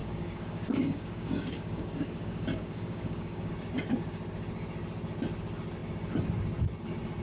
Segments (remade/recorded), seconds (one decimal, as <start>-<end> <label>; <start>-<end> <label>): 0.0-3.5 remade; 3.5-7.2 recorded